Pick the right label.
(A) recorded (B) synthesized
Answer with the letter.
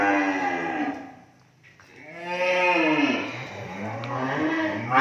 A